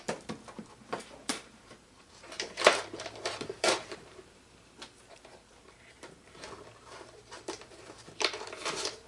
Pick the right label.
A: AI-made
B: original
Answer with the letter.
A